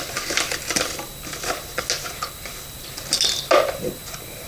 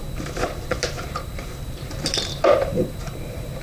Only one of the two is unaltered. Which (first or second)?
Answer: first